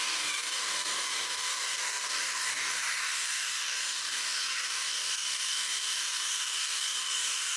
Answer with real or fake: fake